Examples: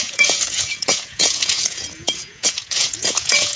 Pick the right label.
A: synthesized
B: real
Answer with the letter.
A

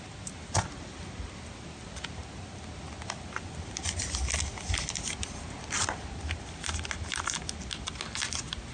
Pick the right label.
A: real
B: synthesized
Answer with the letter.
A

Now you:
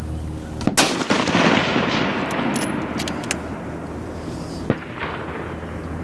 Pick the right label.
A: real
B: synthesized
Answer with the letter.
A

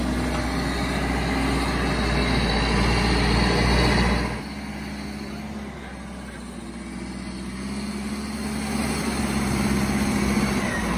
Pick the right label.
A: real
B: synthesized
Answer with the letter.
A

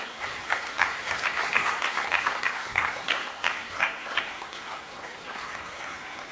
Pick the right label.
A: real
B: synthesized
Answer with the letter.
B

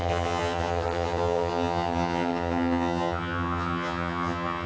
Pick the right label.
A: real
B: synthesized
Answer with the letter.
B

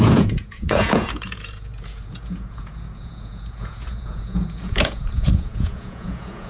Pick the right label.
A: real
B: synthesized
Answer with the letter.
B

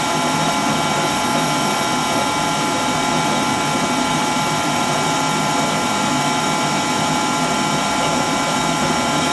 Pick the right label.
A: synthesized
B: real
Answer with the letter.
B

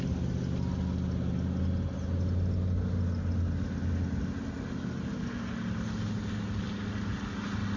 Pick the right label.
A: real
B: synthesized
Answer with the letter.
A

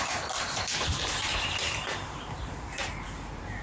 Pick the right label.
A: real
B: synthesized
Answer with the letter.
B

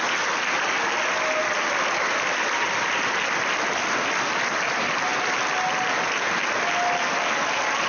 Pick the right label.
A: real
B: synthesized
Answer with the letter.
A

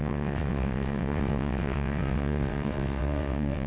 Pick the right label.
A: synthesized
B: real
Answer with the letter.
A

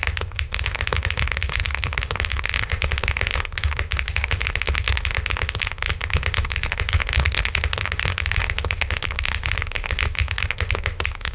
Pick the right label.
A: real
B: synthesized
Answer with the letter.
B